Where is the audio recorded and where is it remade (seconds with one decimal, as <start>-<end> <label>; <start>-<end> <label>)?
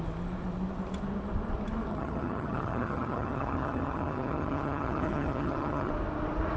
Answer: 0.0-1.9 recorded; 1.9-5.9 remade; 5.9-6.6 recorded